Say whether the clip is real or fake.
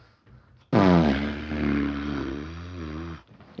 real